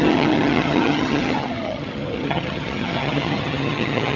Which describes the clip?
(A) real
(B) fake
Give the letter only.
B